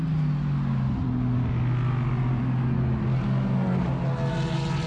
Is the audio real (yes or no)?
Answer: yes